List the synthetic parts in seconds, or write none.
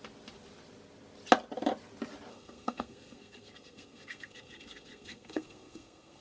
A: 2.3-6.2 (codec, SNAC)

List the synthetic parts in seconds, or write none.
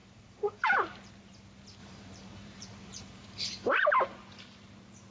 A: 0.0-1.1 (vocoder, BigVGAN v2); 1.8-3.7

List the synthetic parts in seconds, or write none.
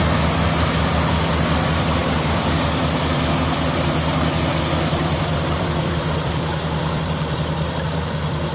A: 2.0-2.6 (vocoder, BigVGAN v2); 4.5-7.7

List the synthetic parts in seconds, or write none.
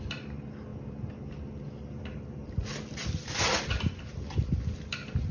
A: none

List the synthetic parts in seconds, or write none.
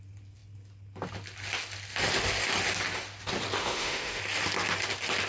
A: 3.6-4.2 (autoencoder, DAC-VAE)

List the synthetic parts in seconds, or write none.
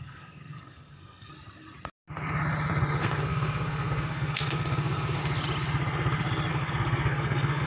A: 0.0-1.3 (codec, SNAC); 3.0-5.2; 6.5-7.7